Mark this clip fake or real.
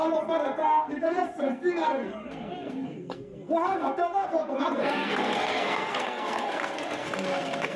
fake